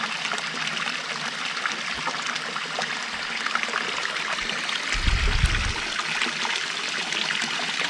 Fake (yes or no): no